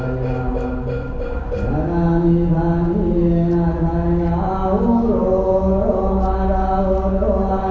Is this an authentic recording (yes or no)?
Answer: yes